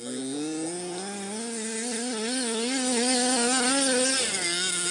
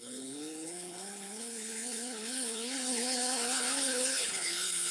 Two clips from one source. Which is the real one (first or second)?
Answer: first